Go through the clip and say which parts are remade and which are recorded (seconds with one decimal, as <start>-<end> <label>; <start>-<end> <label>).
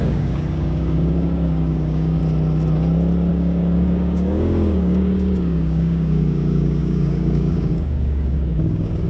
0.0-2.2 remade; 2.2-3.3 recorded; 3.3-9.1 remade